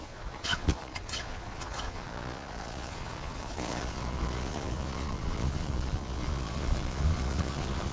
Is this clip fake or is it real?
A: fake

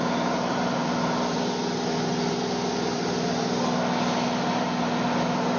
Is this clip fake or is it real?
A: real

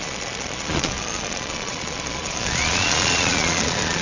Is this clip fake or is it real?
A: fake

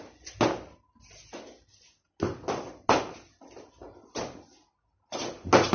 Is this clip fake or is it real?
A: real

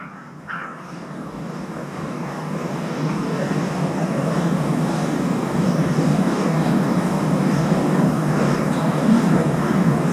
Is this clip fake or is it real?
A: fake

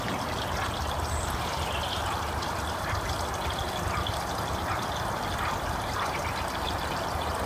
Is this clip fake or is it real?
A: fake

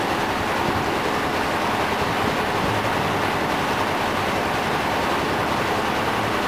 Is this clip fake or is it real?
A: real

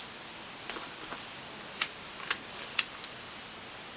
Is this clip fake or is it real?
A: real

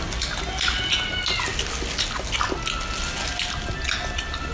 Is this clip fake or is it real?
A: real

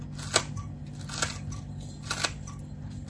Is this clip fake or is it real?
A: real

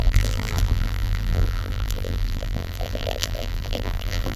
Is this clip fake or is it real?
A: fake